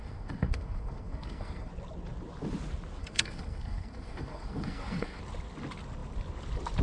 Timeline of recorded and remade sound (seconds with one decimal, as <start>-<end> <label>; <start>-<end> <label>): 0.0-1.7 remade; 1.7-3.0 recorded; 3.0-5.2 remade; 5.2-6.8 recorded